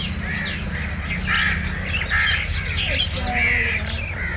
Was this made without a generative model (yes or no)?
yes